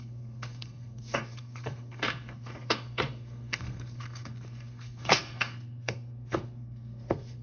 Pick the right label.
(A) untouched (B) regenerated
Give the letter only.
B